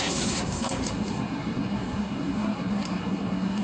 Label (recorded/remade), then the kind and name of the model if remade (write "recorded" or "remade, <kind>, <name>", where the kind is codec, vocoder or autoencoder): remade, codec, SNAC